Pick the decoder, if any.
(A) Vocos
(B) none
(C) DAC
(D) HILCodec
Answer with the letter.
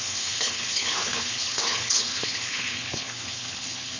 D